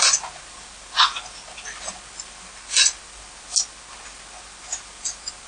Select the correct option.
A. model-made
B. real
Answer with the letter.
B